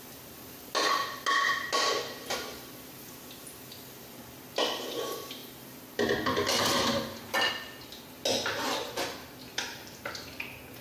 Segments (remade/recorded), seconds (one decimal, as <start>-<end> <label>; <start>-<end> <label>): 0.0-9.7 recorded; 9.7-10.3 remade; 10.3-10.8 recorded